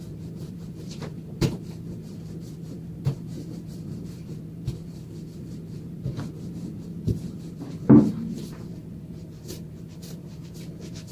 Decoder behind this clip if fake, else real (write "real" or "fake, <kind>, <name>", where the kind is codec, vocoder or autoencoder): fake, vocoder, BigVGAN v2